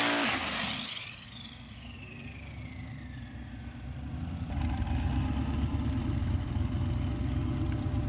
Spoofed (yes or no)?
no